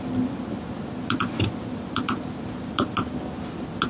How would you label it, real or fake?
real